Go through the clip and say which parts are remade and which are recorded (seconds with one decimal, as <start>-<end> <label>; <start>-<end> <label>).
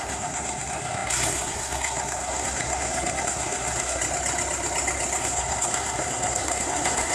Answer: 0.0-4.0 remade; 4.0-5.2 recorded; 5.2-7.1 remade